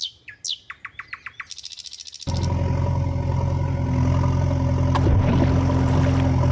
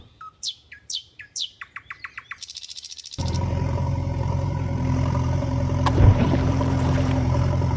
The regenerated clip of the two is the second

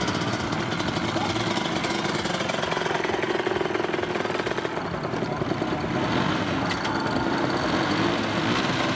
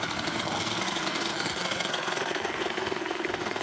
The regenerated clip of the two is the second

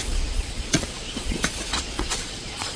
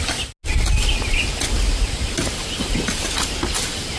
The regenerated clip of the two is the first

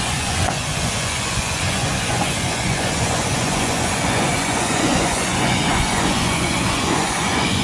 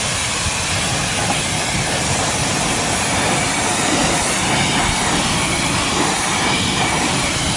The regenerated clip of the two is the first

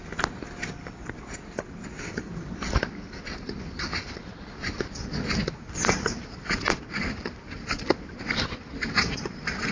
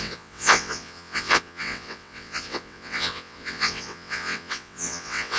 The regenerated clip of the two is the second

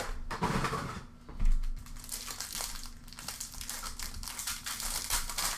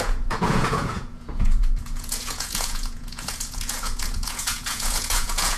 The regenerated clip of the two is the second